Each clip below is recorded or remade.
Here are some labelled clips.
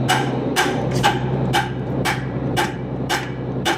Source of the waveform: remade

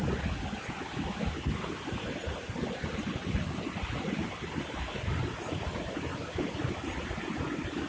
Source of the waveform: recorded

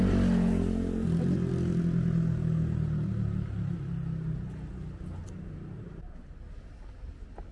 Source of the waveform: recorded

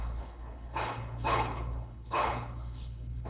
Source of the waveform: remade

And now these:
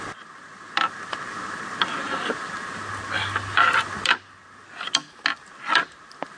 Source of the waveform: recorded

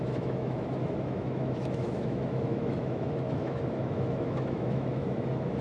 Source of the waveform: remade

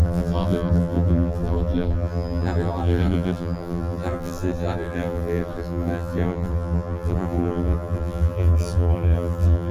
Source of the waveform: remade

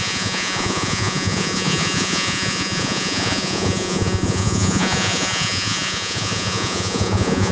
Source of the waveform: remade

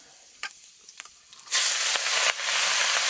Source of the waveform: remade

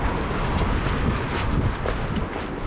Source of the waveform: recorded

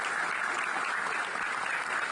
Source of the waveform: recorded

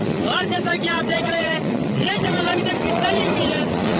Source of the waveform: remade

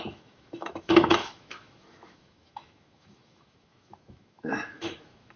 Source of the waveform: remade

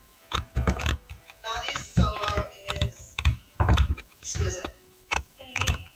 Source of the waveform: remade